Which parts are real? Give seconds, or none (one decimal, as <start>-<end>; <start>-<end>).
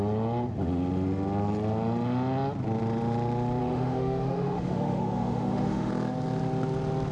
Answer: 0.0-3.6; 5.9-7.1